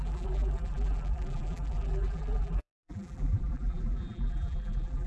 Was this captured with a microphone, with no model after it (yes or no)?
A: no